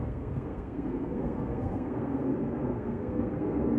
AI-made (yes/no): yes